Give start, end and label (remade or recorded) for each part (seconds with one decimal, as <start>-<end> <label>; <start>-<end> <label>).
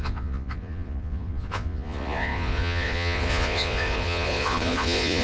0.0-5.2 remade